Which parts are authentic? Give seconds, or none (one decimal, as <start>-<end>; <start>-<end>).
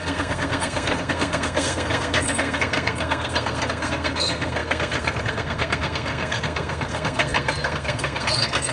none